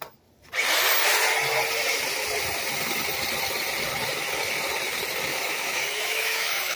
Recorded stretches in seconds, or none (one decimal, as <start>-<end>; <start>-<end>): 0.0-5.3